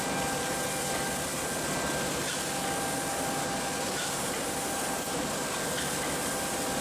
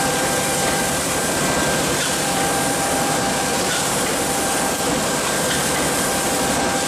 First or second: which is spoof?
second